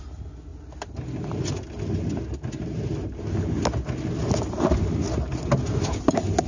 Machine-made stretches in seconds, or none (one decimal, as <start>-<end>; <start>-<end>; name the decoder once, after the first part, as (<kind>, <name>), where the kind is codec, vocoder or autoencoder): none